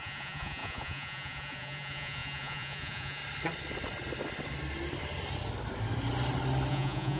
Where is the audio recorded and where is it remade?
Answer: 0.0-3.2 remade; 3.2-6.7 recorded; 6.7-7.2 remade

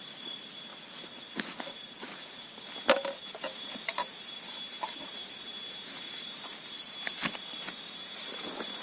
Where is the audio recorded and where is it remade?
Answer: 0.0-0.7 recorded; 0.7-2.6 remade; 2.6-8.8 recorded

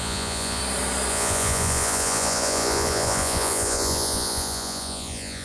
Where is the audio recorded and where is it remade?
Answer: 0.0-0.6 remade; 0.6-1.1 recorded; 1.1-5.4 remade

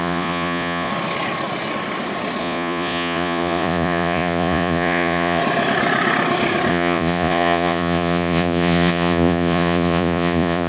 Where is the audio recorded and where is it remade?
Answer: 0.0-0.9 remade; 0.9-2.4 recorded; 2.4-5.4 remade; 5.4-6.7 recorded; 6.7-10.7 remade

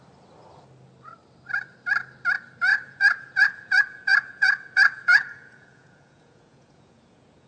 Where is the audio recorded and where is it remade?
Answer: 0.0-2.7 recorded; 2.7-7.5 remade

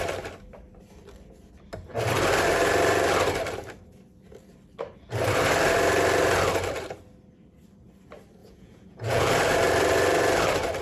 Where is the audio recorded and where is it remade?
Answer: 0.0-8.4 recorded; 8.4-9.3 remade; 9.3-10.8 recorded

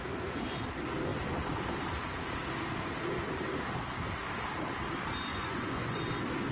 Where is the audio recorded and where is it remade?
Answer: 0.0-5.3 recorded; 5.3-6.0 remade; 6.0-6.5 recorded

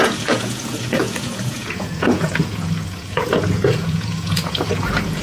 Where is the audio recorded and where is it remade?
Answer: 0.0-5.2 remade